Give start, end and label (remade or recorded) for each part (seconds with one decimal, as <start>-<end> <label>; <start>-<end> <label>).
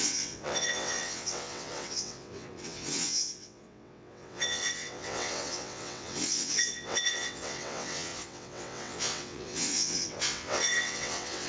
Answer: 0.0-11.5 remade